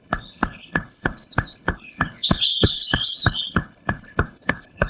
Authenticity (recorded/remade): remade